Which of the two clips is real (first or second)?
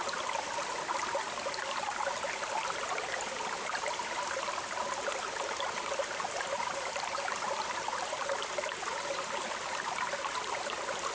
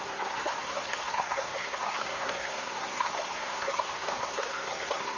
first